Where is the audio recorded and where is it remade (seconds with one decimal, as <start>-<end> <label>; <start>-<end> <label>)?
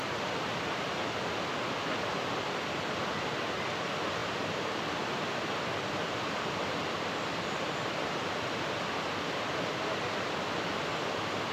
0.0-4.2 recorded; 4.2-8.8 remade; 8.8-11.5 recorded